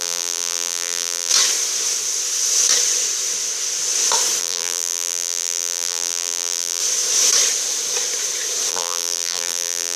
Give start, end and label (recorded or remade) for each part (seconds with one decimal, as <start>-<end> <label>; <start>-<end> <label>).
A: 0.0-1.3 remade; 1.3-4.4 recorded; 4.4-6.8 remade; 6.8-8.7 recorded; 8.7-10.0 remade